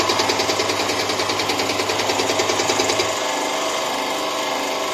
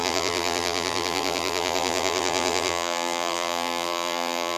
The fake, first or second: second